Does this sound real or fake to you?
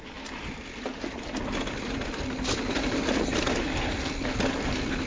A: real